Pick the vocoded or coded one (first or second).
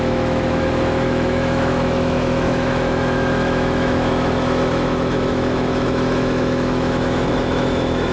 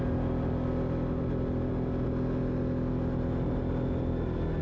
first